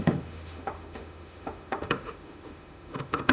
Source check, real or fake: fake